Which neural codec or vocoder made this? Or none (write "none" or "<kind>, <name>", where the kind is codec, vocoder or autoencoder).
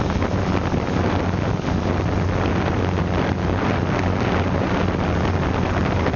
none